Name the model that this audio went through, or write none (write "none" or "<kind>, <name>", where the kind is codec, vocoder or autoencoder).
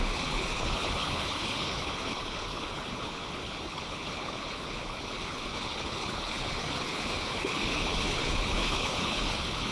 codec, HILCodec